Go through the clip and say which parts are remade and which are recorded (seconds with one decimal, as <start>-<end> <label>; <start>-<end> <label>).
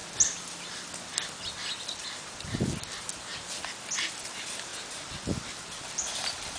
0.0-6.6 recorded